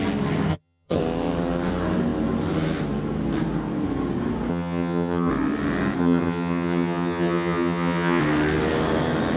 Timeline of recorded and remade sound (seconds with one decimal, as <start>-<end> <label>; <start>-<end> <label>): 0.0-0.5 recorded; 0.5-1.0 remade; 1.0-4.5 recorded; 4.5-5.3 remade; 5.3-6.0 recorded; 6.0-8.2 remade; 8.2-9.4 recorded